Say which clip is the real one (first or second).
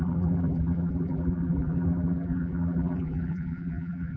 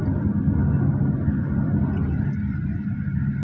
second